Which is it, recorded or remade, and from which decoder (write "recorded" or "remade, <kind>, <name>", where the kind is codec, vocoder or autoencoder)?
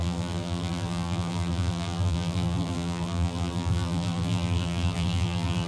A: remade, vocoder, BigVGAN v2